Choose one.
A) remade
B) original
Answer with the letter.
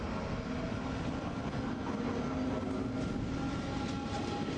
B